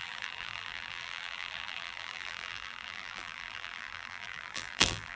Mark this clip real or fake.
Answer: fake